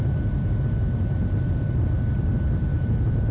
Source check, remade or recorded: recorded